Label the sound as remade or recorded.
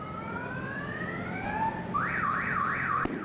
recorded